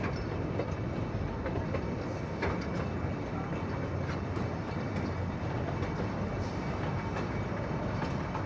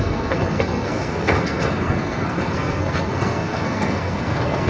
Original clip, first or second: first